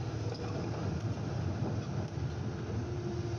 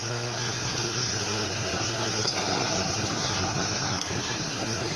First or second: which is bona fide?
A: first